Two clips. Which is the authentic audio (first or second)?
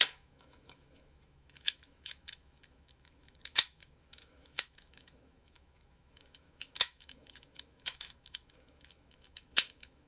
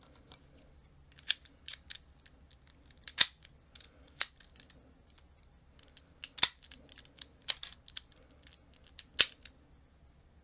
second